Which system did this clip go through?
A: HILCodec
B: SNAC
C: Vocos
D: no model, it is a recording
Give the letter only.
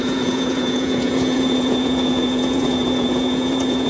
C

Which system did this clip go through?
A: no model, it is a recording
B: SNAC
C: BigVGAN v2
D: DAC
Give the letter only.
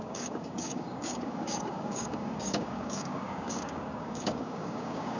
D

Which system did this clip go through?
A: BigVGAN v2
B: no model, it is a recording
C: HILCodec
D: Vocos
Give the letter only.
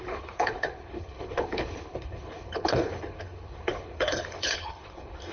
C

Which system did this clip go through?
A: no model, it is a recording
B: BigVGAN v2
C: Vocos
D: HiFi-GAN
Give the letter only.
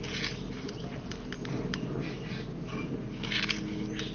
A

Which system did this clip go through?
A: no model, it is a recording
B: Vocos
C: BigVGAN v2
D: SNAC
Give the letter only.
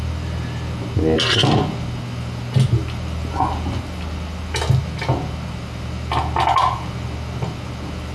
A